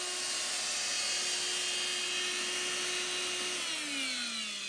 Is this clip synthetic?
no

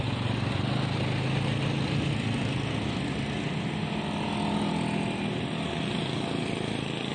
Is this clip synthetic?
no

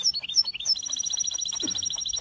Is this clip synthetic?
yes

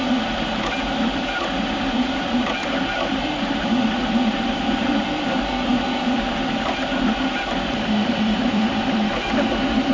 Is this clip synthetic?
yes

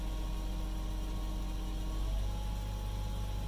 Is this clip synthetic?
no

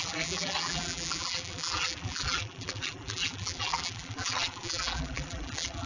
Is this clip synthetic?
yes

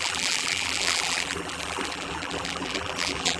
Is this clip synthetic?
yes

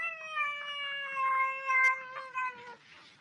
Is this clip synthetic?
no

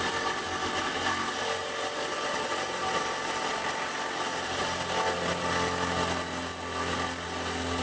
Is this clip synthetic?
no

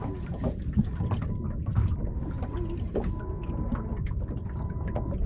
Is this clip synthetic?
no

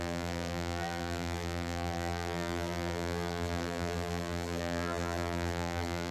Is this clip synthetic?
yes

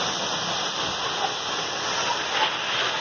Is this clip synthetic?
no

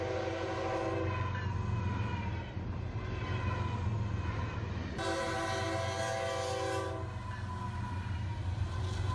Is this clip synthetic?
no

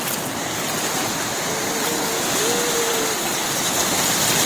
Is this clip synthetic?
no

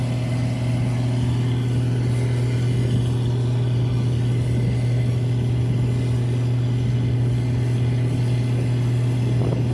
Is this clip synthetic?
no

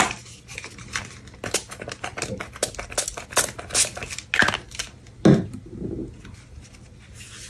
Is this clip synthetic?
no